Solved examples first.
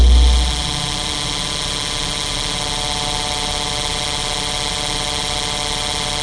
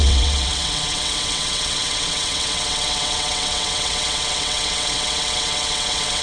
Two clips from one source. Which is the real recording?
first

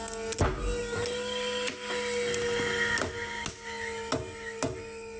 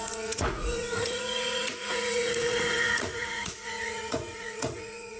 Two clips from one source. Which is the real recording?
first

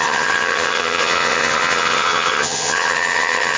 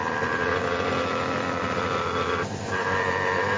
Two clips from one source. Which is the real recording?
second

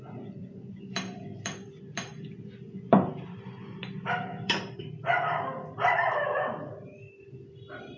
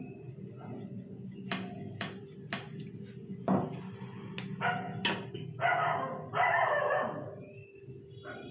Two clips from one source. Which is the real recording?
second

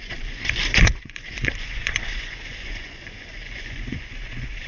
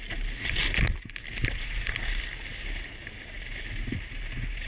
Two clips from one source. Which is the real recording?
second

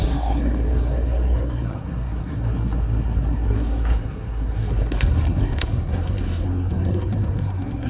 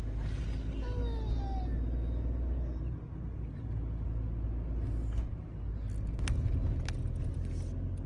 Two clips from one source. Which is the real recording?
second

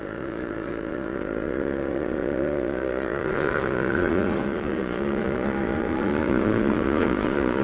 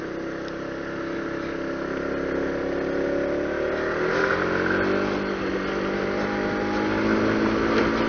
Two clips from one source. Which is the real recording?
second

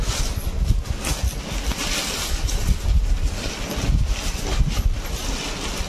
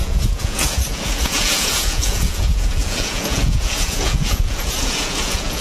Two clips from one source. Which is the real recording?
first